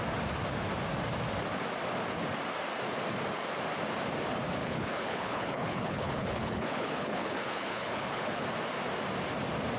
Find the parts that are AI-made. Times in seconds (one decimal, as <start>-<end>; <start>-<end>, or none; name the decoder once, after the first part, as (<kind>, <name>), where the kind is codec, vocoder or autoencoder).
4.6-8.4 (codec, HILCodec)